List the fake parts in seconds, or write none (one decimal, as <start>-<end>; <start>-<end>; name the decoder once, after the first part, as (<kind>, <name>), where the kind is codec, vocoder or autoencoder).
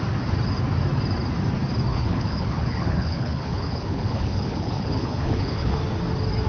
1.9-5.8 (codec, HILCodec)